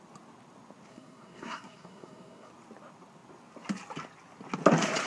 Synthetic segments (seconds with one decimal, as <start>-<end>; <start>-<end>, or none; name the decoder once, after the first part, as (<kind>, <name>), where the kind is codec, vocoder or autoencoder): 0.9-2.5 (codec, SNAC)